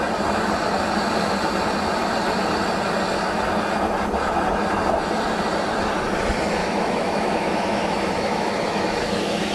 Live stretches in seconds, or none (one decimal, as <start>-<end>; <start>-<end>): 0.0-6.6